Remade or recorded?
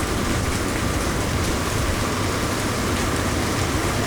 recorded